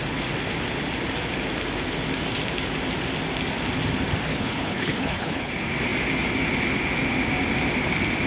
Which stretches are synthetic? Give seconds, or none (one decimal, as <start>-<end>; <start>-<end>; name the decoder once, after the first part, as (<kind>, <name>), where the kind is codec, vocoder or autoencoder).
4.3-5.5 (codec, HILCodec)